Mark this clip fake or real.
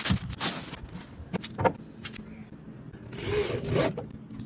real